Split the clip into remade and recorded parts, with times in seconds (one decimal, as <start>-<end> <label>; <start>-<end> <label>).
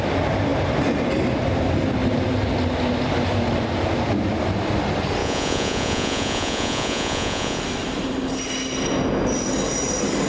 0.0-5.2 recorded; 5.2-7.6 remade; 7.6-10.3 recorded